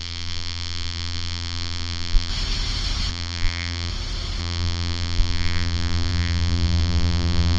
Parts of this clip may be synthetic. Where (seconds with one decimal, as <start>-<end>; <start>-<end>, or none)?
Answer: 0.0-2.3; 3.1-3.9; 4.4-7.6

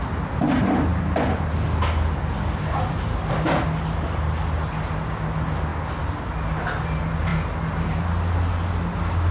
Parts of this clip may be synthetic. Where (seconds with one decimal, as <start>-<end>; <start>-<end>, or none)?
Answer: none

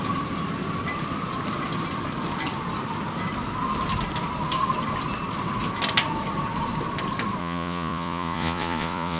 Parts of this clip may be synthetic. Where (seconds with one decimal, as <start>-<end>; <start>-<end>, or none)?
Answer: 7.4-9.2

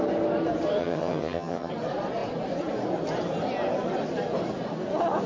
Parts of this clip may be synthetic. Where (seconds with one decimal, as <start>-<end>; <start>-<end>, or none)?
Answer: 0.8-1.7

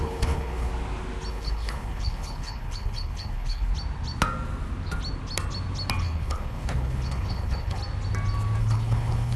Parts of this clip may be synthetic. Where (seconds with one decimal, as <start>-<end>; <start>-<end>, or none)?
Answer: 0.0-0.7; 1.3-3.7; 6.0-7.8; 8.6-9.4

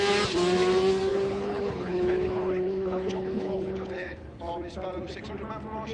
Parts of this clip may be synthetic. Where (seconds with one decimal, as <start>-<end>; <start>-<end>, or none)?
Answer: 1.1-4.4

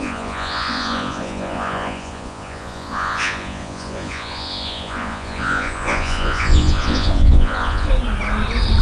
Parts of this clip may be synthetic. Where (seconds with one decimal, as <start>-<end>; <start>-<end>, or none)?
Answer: 0.0-7.9

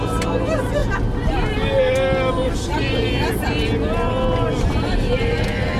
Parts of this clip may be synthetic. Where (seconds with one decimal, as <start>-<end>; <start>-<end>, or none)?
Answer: none